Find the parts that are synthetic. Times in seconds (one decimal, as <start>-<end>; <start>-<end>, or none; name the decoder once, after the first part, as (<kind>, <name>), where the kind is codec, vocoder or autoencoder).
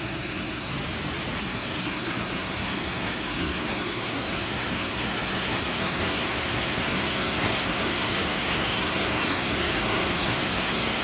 0.0-0.7 (codec, SNAC); 1.4-11.0